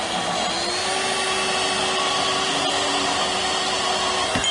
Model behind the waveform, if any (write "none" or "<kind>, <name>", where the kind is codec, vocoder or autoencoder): none